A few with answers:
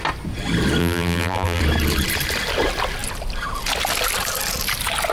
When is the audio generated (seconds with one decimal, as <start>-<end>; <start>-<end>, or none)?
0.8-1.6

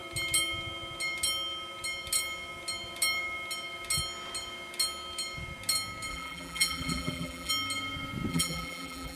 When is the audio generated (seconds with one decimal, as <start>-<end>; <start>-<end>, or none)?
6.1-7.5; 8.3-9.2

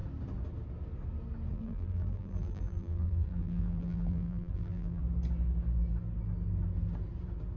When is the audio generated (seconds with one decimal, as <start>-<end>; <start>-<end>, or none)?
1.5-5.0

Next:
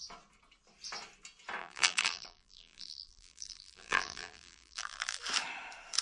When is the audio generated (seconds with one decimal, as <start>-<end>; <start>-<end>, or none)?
1.6-5.2